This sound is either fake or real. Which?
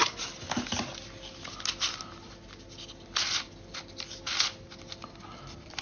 real